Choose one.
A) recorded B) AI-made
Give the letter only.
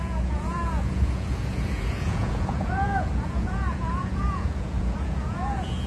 B